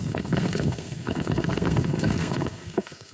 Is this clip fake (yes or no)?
yes